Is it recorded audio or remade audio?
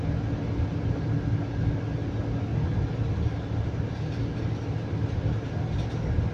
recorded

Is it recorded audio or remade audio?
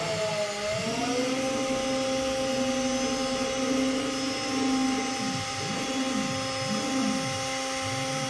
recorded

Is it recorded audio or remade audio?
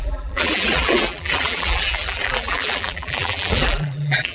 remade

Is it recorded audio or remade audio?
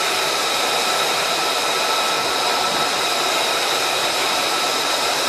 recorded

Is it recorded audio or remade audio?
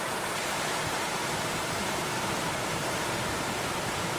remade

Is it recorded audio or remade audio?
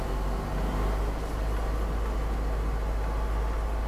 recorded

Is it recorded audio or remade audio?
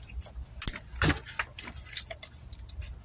recorded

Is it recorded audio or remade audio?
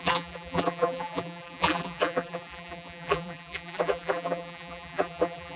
remade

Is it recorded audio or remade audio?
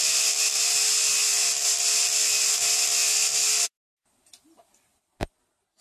recorded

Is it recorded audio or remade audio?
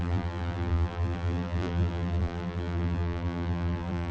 remade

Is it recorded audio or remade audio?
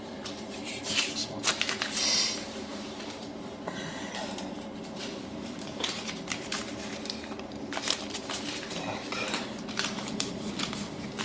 remade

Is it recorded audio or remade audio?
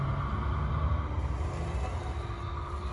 recorded